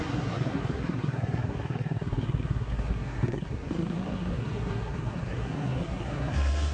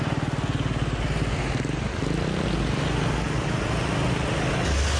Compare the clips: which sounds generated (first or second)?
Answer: first